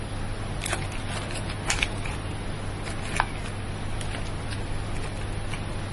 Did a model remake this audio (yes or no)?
no